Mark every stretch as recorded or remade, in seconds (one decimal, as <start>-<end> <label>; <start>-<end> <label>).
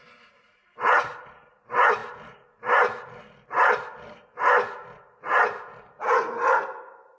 0.0-7.2 recorded